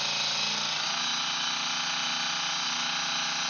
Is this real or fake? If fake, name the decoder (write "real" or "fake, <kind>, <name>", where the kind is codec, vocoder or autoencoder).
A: real